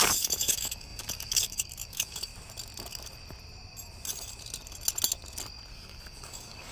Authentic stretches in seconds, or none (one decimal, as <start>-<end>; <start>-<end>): 2.3-5.7

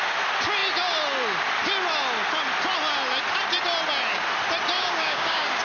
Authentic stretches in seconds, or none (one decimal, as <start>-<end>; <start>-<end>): 0.0-4.8